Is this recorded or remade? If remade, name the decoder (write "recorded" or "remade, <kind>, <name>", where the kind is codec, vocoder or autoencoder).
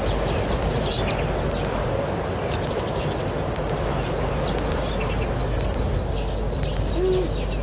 recorded